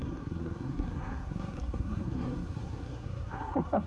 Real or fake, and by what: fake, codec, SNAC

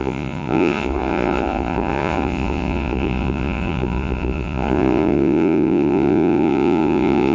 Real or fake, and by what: fake, vocoder, Vocos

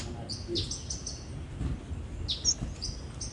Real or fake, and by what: real